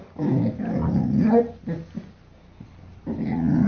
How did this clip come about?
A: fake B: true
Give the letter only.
B